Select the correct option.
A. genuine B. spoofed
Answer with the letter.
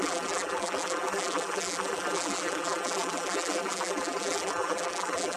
B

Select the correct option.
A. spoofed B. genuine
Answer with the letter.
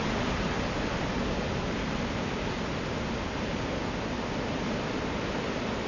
B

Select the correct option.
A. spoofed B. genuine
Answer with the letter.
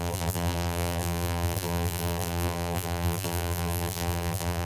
A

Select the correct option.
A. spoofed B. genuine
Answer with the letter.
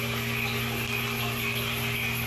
B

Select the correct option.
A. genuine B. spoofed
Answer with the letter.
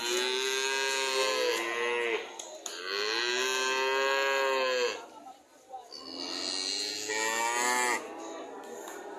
A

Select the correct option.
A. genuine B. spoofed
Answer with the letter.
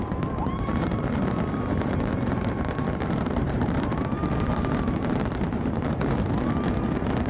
B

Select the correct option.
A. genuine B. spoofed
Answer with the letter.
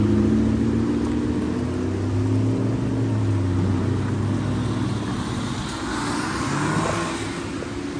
A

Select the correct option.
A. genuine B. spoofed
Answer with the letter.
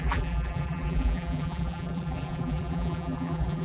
B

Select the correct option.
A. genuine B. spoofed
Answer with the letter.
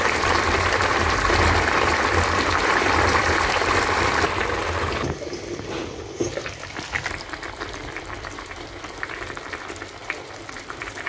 B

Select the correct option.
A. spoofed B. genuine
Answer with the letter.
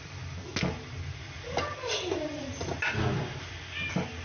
B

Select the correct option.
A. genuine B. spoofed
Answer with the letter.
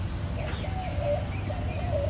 A